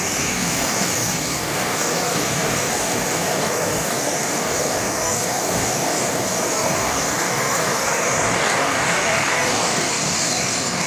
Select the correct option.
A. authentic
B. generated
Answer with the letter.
B